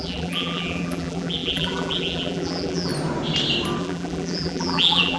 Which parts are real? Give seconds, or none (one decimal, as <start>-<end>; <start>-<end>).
2.9-3.8